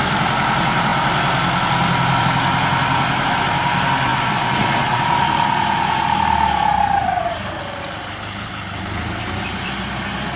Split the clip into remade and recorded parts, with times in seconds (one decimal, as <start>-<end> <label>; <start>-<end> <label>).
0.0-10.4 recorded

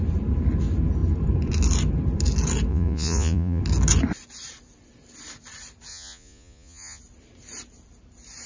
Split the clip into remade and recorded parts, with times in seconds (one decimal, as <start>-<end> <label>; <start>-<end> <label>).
0.0-2.7 recorded; 2.7-3.6 remade; 3.6-5.9 recorded; 5.9-7.0 remade; 7.0-8.5 recorded

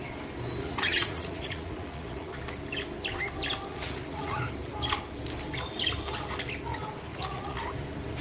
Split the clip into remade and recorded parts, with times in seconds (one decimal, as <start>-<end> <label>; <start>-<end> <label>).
0.0-0.6 recorded; 0.6-2.4 remade; 2.4-3.7 recorded; 3.7-4.4 remade; 4.4-7.1 recorded; 7.1-7.6 remade; 7.6-8.2 recorded

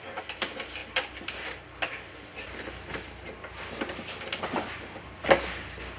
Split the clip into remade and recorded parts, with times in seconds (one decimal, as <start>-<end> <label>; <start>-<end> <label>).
0.0-6.0 recorded

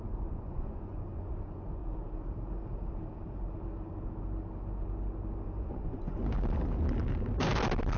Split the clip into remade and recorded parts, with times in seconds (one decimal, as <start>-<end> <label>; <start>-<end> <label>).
0.0-1.8 remade; 1.8-5.6 recorded; 5.6-6.2 remade; 6.2-8.0 recorded

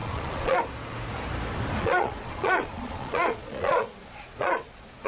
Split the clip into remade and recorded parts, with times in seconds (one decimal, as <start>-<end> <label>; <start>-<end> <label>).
0.0-0.6 remade; 0.6-1.8 recorded; 1.8-5.1 remade